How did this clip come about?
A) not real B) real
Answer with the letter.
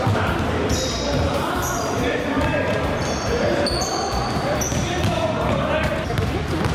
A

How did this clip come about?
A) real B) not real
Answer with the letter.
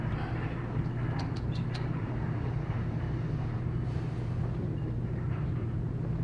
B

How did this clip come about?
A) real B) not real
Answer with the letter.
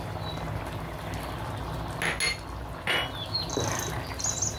A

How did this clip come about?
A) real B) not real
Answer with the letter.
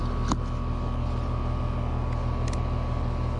A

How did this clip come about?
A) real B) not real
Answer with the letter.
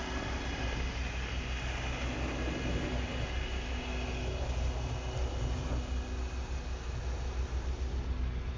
A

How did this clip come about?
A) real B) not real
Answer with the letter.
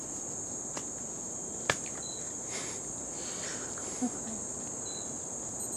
A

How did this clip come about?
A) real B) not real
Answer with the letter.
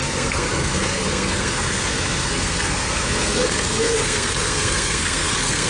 B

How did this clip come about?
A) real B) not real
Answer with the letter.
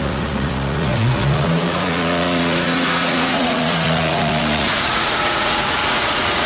B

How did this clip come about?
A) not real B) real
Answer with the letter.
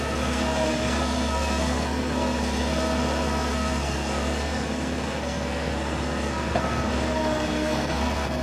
A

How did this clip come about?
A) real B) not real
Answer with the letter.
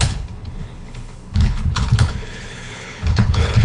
B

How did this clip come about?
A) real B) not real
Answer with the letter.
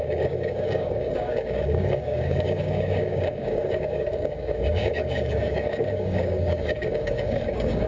B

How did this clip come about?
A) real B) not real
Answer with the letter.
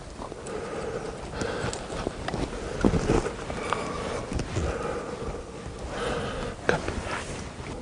A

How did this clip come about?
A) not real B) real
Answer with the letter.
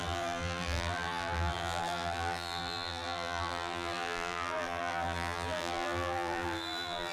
A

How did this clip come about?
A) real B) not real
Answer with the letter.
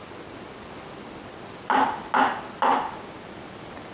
A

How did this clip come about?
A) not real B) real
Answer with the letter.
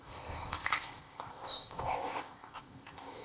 A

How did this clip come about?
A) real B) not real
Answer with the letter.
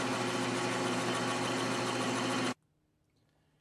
A